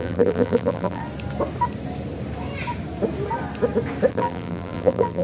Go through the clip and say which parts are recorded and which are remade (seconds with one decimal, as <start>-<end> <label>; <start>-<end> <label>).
0.0-1.0 remade; 1.0-4.1 recorded; 4.1-5.2 remade